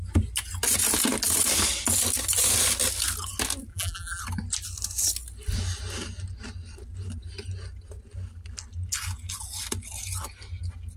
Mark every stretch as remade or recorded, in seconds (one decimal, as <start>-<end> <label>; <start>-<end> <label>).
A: 0.0-3.7 recorded; 3.7-4.2 remade; 4.2-11.0 recorded